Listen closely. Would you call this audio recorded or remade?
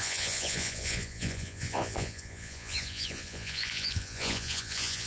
remade